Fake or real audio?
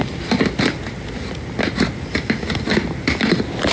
real